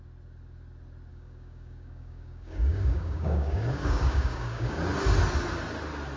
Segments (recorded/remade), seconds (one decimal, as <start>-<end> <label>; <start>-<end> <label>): 0.0-1.1 recorded; 1.1-4.8 remade; 4.8-6.2 recorded